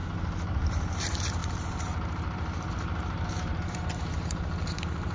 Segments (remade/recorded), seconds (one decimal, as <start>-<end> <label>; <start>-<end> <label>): 0.0-5.1 remade

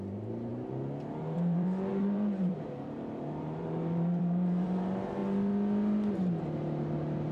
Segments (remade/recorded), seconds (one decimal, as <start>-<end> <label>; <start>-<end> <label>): 0.0-0.5 remade; 0.5-1.2 recorded; 1.2-5.2 remade; 5.2-6.1 recorded; 6.1-7.3 remade

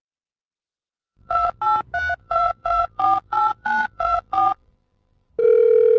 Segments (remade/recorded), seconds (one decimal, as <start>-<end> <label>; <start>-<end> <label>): 0.0-0.5 recorded; 0.5-1.6 remade; 1.6-2.2 recorded; 2.2-5.3 remade; 5.3-6.0 recorded

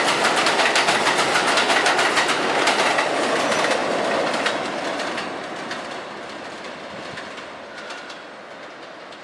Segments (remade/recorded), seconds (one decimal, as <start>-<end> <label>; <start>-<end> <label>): 0.0-3.8 recorded; 3.8-5.1 remade; 5.1-9.2 recorded

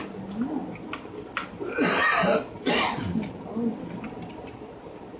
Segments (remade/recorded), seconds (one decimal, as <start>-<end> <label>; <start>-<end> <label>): 0.0-0.6 recorded; 0.6-1.6 remade; 1.6-2.0 recorded; 2.0-3.3 remade; 3.3-5.2 recorded

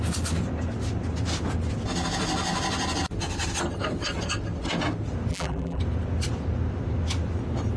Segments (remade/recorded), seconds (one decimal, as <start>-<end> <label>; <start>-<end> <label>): 0.0-5.3 recorded; 5.3-5.8 remade; 5.8-7.8 recorded

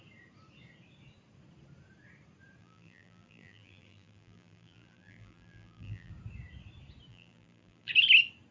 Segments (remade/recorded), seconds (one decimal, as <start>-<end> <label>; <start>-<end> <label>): 0.0-2.6 recorded; 2.6-6.1 remade; 6.1-7.1 recorded; 7.1-7.9 remade; 7.9-8.5 recorded

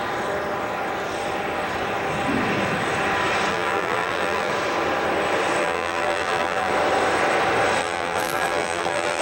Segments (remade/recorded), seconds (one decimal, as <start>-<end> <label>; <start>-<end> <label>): 0.0-3.5 recorded; 3.5-4.5 remade; 4.5-5.6 recorded; 5.6-6.7 remade; 6.7-7.8 recorded; 7.8-9.2 remade